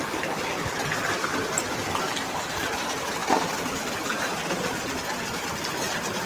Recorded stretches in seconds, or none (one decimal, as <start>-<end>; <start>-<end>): 0.0-6.3